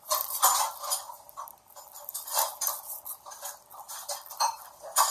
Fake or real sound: real